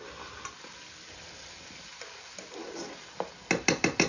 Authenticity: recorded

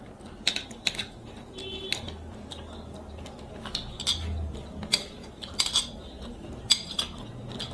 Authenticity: recorded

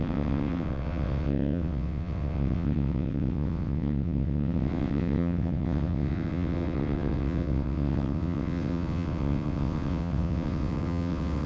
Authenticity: remade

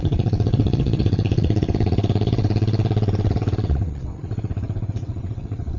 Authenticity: remade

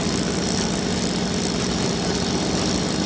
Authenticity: recorded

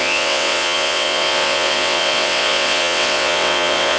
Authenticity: remade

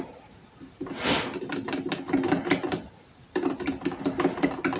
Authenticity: recorded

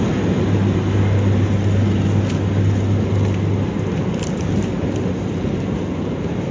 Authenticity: recorded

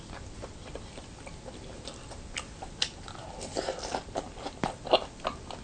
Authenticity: recorded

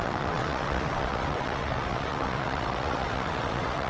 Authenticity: remade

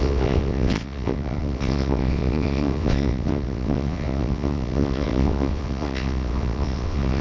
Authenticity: remade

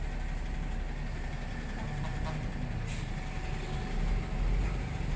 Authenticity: recorded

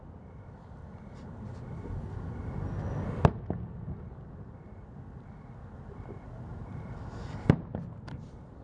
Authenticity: recorded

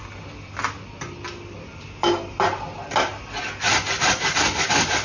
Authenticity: recorded